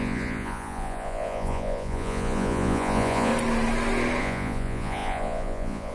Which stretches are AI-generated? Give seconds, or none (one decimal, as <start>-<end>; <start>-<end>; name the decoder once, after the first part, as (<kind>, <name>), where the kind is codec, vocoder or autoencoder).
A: 0.0-3.3 (vocoder, Vocos); 4.2-5.9

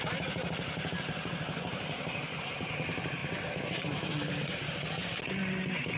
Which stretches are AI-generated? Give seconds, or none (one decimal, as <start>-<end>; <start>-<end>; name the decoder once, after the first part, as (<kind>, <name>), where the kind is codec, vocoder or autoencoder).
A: none

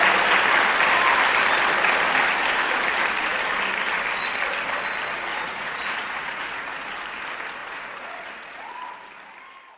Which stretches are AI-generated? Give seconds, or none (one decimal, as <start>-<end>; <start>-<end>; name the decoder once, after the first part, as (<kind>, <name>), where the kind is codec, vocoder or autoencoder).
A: 5.3-6.7 (vocoder, Vocos); 7.6-8.7